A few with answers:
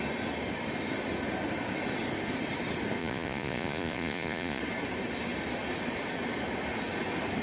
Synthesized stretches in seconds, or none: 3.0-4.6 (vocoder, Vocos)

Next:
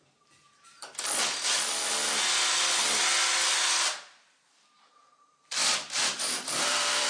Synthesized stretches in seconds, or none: 0.0-0.4 (vocoder, BigVGAN v2); 4.7-7.1

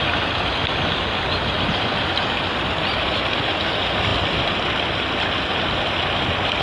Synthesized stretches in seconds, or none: none

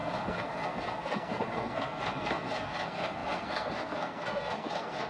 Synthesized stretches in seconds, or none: 0.0-5.1 (codec, SNAC)